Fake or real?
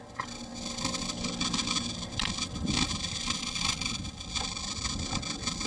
real